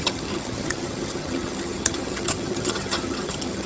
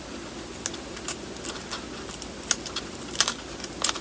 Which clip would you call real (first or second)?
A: second